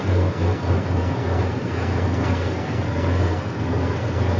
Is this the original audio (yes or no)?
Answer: no